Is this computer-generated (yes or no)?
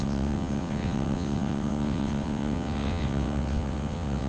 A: yes